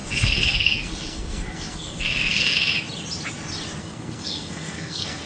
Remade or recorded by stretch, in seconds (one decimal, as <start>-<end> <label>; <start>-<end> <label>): 0.0-2.7 remade; 2.7-3.8 recorded; 3.8-5.3 remade